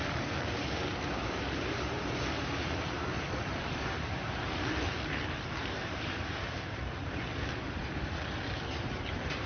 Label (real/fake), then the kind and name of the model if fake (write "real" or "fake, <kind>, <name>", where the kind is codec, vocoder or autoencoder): fake, vocoder, BigVGAN v2